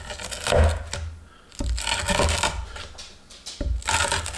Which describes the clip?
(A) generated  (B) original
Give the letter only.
B